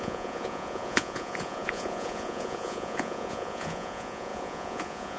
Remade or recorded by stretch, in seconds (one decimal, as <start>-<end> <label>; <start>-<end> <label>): 0.0-5.2 remade